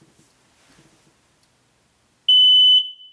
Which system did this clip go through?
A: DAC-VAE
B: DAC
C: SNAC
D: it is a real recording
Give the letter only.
D